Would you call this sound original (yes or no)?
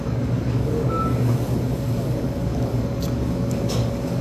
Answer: no